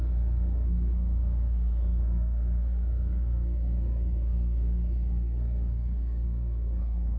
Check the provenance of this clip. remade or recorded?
remade